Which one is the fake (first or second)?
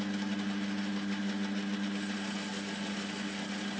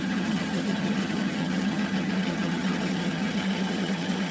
second